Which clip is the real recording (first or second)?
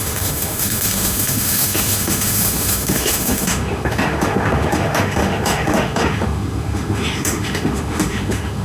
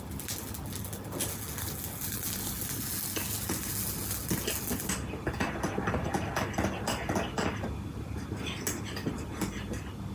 second